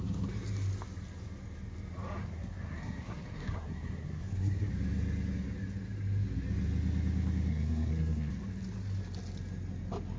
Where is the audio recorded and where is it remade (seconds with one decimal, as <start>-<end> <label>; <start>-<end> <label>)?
0.0-2.2 recorded; 2.2-4.7 remade; 4.7-7.5 recorded; 7.5-8.3 remade; 8.3-10.2 recorded